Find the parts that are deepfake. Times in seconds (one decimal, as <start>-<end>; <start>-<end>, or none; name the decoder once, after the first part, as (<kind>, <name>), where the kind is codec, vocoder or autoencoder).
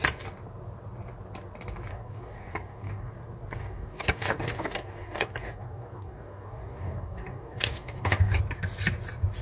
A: 1.9-3.1 (codec, DAC); 3.6-8.4